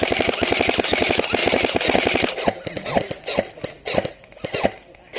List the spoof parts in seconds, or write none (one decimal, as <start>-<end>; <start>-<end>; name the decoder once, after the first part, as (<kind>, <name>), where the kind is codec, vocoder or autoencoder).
none